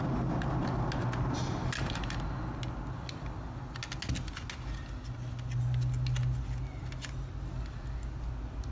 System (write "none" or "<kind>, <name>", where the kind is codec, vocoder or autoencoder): none